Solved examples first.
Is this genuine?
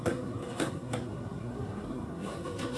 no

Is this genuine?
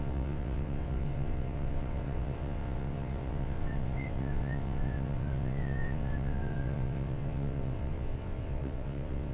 no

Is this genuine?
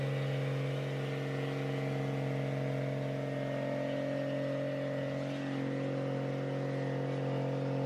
yes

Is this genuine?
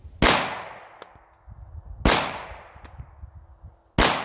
yes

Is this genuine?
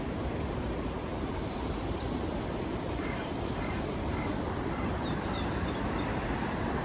no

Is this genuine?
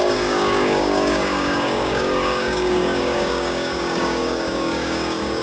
no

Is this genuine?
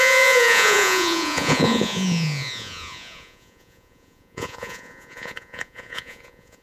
no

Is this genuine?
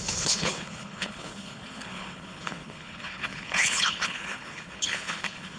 no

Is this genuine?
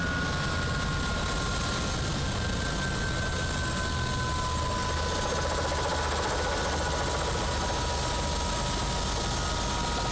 yes